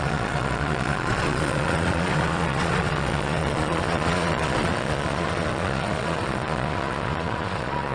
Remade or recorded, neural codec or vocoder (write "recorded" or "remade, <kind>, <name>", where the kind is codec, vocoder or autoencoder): remade, vocoder, Vocos